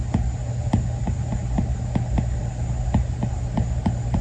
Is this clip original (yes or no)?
yes